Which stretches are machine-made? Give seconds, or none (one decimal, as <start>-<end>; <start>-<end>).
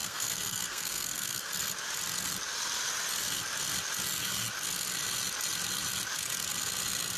0.0-1.5